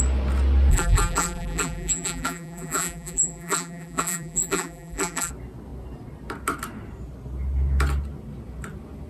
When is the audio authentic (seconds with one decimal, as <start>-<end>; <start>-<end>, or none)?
0.0-0.7; 5.3-9.1